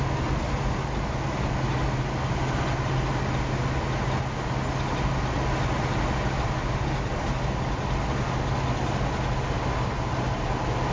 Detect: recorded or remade recorded